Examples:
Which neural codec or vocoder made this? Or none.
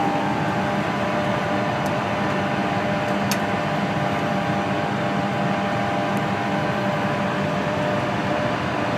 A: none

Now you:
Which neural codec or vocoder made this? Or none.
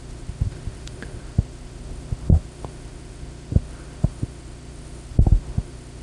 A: autoencoder, DAC-VAE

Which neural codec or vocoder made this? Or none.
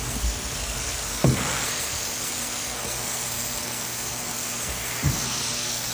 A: codec, SNAC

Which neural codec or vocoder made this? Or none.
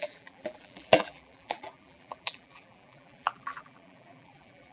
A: vocoder, BigVGAN v2